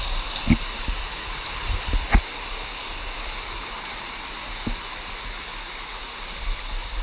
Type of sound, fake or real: real